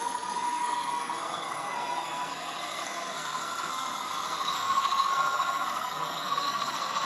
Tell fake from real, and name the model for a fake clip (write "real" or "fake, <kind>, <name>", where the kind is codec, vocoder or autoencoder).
fake, codec, SNAC